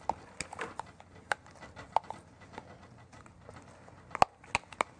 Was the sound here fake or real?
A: real